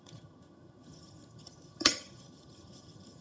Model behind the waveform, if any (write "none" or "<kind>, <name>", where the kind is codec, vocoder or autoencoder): vocoder, HiFi-GAN